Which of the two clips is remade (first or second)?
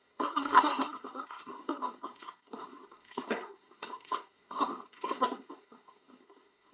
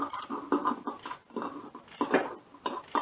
first